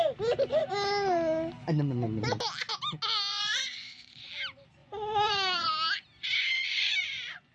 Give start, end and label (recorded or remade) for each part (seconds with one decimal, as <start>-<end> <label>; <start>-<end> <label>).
0.0-3.3 recorded; 3.3-4.3 remade; 4.3-4.8 recorded; 4.8-5.7 remade; 5.7-6.5 recorded; 6.5-7.5 remade